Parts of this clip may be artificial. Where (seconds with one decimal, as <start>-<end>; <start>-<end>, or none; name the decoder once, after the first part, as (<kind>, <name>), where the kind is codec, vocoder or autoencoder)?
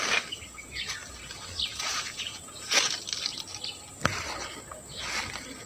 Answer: 1.7-2.9 (vocoder, Vocos)